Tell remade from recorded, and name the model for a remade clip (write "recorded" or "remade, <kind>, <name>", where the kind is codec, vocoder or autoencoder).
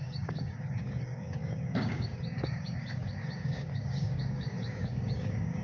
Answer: remade, codec, DAC